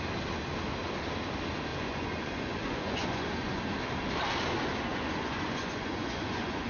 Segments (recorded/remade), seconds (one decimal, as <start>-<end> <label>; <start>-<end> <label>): 0.0-1.7 recorded; 1.7-3.6 remade; 3.6-4.9 recorded; 4.9-6.7 remade